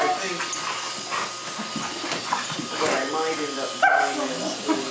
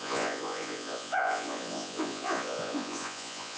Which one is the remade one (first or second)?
second